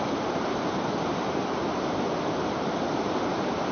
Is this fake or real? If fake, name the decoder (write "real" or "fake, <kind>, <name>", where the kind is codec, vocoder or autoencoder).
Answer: real